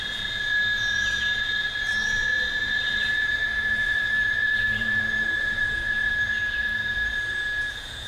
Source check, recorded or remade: remade